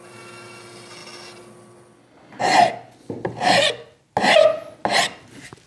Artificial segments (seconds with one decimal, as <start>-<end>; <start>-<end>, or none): none